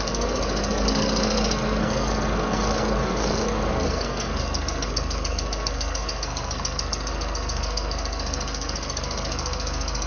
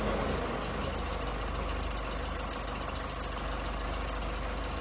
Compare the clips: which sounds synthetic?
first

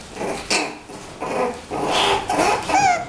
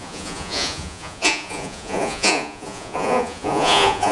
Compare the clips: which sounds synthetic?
second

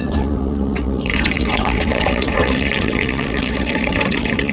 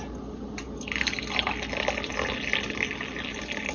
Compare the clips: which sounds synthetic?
first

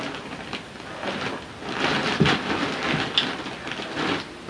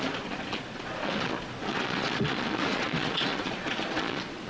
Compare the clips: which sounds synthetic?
second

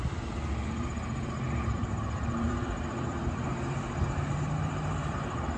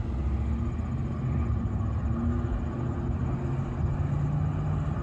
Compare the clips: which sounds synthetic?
first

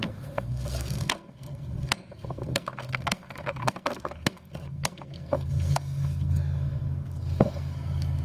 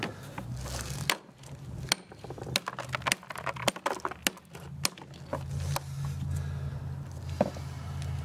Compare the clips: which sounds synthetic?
first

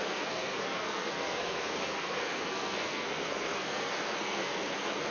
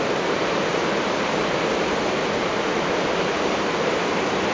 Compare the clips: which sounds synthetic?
first